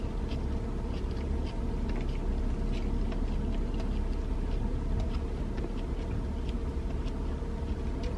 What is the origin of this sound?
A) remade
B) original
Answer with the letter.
B